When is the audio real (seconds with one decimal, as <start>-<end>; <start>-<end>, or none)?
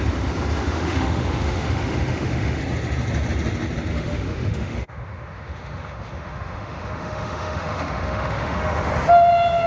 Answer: 0.0-0.6; 2.6-3.9; 8.9-9.7